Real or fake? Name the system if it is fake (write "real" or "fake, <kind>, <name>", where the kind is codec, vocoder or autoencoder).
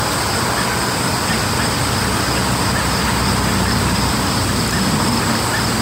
real